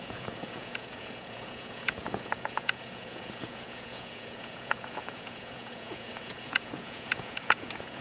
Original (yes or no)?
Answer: no